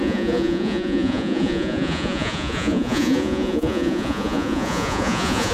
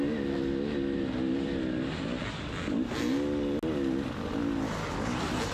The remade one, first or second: first